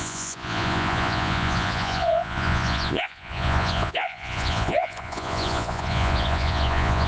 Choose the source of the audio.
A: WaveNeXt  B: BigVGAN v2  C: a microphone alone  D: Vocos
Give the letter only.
D